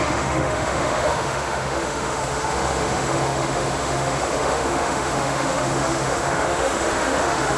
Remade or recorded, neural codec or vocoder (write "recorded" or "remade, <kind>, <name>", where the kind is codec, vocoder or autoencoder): remade, autoencoder, DAC-VAE